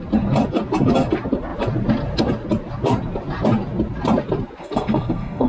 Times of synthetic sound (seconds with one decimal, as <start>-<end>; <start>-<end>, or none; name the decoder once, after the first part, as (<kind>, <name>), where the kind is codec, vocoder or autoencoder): 4.6-5.5 (codec, SNAC)